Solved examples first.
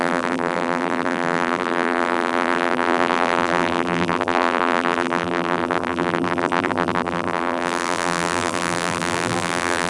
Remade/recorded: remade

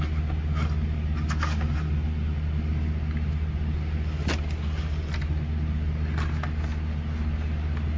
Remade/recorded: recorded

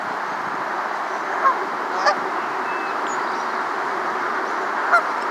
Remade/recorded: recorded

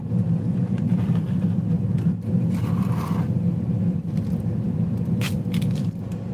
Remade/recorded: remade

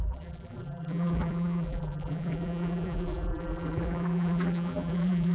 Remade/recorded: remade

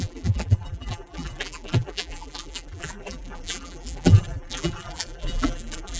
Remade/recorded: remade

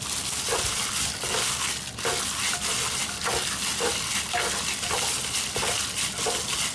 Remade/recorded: recorded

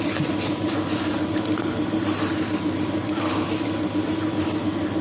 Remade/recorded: remade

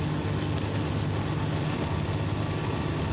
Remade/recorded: recorded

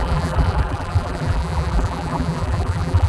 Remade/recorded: remade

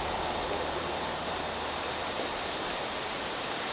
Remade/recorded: remade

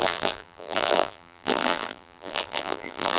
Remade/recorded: remade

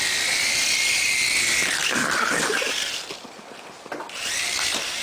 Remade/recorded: recorded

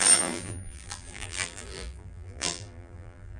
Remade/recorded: remade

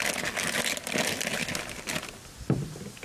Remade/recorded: recorded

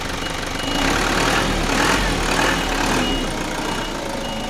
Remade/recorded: recorded